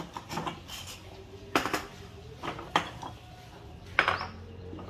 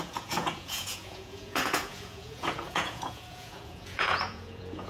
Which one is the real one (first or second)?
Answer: first